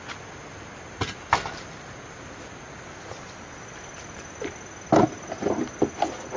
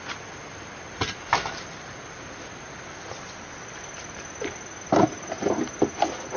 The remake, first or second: second